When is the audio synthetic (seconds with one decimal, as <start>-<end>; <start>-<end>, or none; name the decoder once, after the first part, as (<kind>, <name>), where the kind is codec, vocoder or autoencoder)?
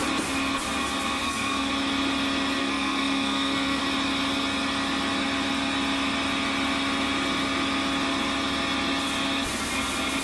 1.2-1.7 (codec, SNAC); 2.6-3.8